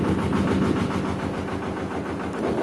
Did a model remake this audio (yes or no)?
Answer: no